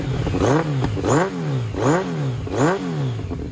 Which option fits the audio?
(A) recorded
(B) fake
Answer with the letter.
A